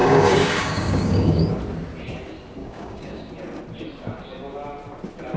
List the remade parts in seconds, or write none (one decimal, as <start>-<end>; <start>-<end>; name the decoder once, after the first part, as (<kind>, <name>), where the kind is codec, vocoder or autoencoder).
0.0-1.6 (codec, DAC); 2.6-3.3